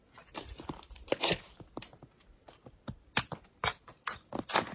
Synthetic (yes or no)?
no